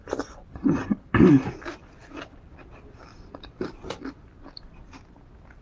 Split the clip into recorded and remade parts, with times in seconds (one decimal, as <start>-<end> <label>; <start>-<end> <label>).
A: 0.0-0.8 recorded; 0.8-1.3 remade; 1.3-5.6 recorded